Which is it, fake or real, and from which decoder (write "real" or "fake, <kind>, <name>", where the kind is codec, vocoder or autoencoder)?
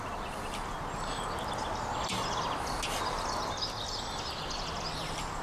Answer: real